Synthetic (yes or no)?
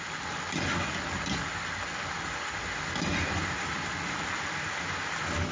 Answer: no